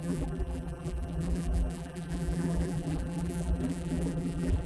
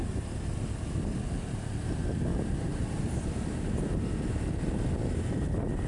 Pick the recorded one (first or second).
second